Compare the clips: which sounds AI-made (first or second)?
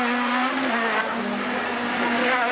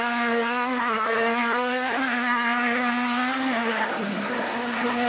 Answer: second